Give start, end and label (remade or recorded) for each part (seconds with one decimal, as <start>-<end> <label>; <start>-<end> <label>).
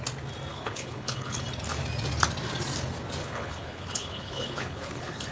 0.0-0.5 recorded; 0.5-1.4 remade; 1.4-3.2 recorded; 3.2-5.3 remade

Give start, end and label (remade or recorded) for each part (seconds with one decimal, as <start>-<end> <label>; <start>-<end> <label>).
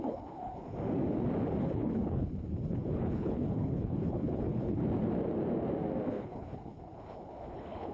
0.0-0.6 remade; 0.6-1.6 recorded; 1.6-4.8 remade; 4.8-6.1 recorded; 6.1-7.9 remade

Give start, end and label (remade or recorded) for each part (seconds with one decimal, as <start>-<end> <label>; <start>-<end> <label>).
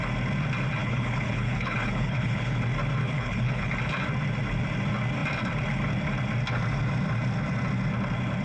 0.0-0.8 recorded; 0.8-2.6 remade; 2.6-3.0 recorded; 3.0-3.7 remade; 3.7-8.4 recorded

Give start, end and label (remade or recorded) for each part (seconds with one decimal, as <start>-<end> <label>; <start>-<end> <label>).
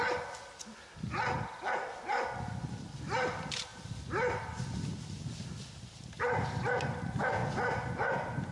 0.0-8.5 recorded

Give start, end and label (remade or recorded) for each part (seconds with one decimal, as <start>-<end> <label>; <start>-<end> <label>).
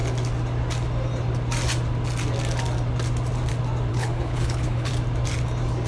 0.0-3.9 recorded; 3.9-4.9 remade; 4.9-5.9 recorded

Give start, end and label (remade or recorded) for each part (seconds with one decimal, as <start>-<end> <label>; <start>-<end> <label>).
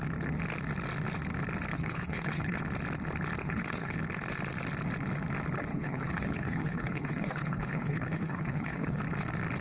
0.0-1.7 recorded; 1.7-2.6 remade; 2.6-3.4 recorded; 3.4-4.0 remade; 4.0-5.7 recorded; 5.7-9.0 remade; 9.0-9.6 recorded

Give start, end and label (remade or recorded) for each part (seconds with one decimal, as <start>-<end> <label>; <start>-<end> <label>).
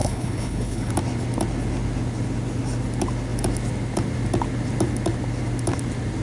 0.0-0.9 remade; 0.9-6.2 recorded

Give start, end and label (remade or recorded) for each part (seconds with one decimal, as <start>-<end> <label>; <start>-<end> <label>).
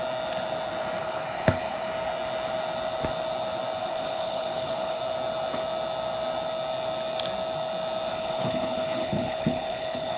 0.0-1.0 recorded; 1.0-1.9 remade; 1.9-3.8 recorded; 3.8-5.0 remade; 5.0-8.1 recorded; 8.1-10.2 remade